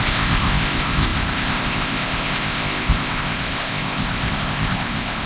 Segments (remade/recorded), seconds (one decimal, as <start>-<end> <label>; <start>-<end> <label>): 0.0-5.3 remade

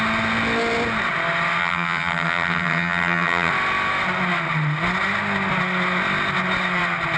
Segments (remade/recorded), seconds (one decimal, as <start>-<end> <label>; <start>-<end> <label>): 0.0-1.6 recorded; 1.6-3.5 remade; 3.5-7.2 recorded

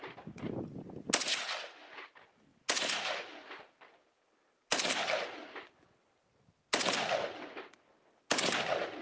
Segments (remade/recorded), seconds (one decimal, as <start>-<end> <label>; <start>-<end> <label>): 0.0-9.0 recorded

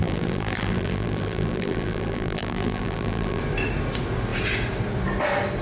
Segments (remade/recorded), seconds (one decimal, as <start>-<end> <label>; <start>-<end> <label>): 0.0-3.4 remade; 3.4-5.6 recorded

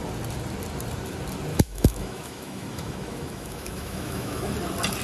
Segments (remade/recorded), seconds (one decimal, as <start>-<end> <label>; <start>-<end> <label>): 0.0-1.5 recorded; 1.5-4.5 remade; 4.5-5.0 recorded